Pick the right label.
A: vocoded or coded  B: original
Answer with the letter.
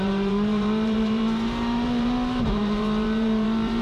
A